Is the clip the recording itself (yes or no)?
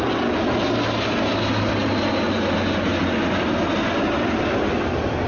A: yes